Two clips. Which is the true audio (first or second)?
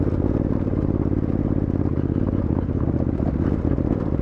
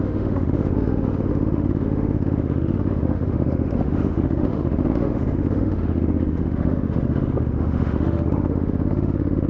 first